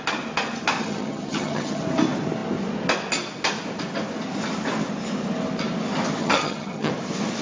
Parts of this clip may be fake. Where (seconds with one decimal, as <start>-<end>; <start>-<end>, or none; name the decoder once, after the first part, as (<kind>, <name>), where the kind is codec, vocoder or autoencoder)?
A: 0.8-1.8 (vocoder, HiFi-GAN); 6.2-6.9